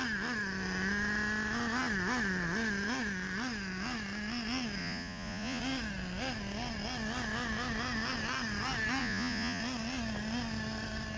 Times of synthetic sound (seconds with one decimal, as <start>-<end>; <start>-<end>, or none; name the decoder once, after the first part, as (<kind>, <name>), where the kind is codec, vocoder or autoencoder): 4.8-5.6 (vocoder, Vocos); 9.0-9.6